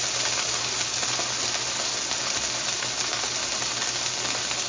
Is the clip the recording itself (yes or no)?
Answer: yes